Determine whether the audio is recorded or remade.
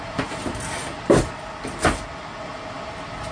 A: recorded